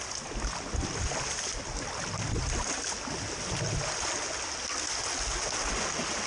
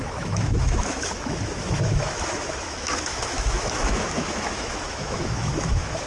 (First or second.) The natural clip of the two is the first